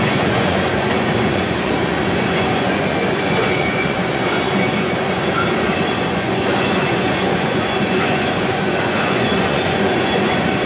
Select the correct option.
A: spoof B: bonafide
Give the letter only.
A